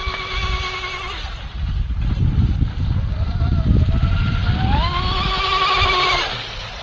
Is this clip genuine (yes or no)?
yes